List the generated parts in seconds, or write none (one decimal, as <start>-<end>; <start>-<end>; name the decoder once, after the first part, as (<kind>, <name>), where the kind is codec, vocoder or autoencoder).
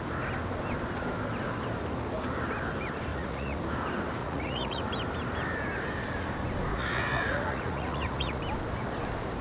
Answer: 3.1-3.6 (vocoder, Vocos); 4.2-4.8; 6.7-8.4